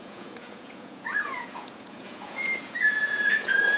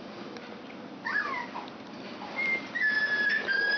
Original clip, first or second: second